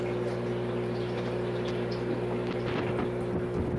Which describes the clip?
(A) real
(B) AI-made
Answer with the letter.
A